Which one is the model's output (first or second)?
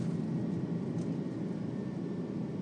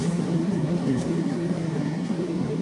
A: second